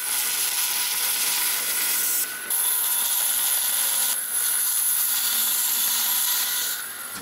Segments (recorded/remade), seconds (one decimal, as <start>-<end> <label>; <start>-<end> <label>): 0.0-7.2 recorded